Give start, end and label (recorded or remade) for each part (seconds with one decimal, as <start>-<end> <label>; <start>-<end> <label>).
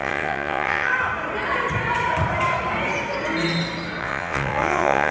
0.0-0.9 remade; 0.9-4.0 recorded; 4.0-5.1 remade